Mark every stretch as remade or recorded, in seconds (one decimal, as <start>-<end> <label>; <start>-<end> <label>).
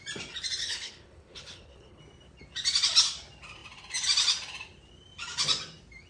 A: 0.0-0.6 recorded; 0.6-2.0 remade; 2.0-6.1 recorded